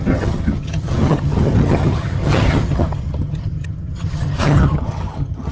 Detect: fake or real fake